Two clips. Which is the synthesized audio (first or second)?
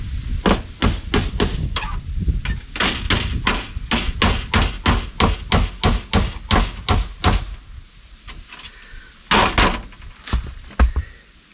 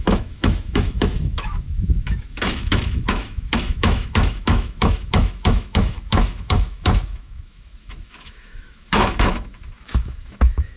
second